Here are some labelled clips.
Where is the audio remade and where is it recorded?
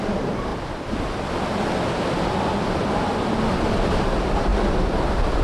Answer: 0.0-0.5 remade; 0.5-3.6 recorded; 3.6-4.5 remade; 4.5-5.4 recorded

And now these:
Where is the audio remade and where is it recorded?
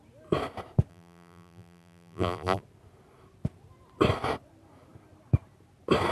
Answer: 0.0-0.9 recorded; 0.9-2.6 remade; 2.6-6.1 recorded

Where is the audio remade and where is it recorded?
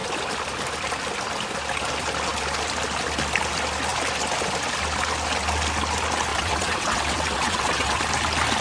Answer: 0.0-6.3 recorded; 6.3-8.0 remade; 8.0-8.6 recorded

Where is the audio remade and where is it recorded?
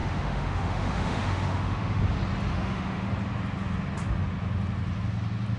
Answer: 0.0-2.0 remade; 2.0-2.5 recorded; 2.5-3.1 remade; 3.1-5.6 recorded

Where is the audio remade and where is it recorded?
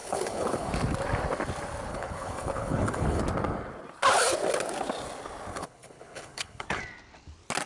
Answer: 0.0-0.7 remade; 0.7-1.9 recorded; 1.9-3.2 remade; 3.2-5.5 recorded; 5.5-6.8 remade; 6.8-7.7 recorded